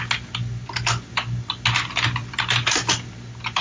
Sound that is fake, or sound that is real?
real